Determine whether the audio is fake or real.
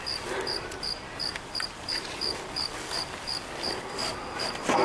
fake